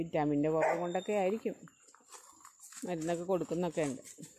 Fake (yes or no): no